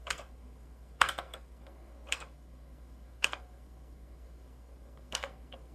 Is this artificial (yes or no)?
yes